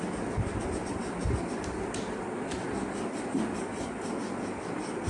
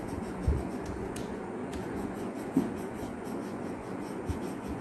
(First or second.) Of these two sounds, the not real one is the second